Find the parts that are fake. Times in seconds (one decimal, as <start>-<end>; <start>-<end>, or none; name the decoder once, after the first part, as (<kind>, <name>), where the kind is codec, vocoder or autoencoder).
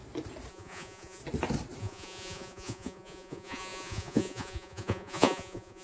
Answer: 0.5-1.2 (vocoder, Vocos); 1.8-5.8